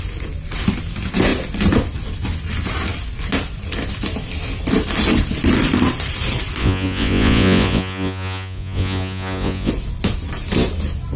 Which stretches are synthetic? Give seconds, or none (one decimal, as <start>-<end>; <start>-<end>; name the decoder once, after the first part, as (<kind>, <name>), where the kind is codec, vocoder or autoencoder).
6.6-9.7 (vocoder, Vocos)